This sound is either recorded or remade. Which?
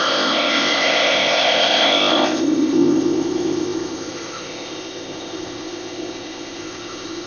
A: remade